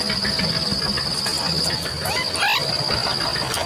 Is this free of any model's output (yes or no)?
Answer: yes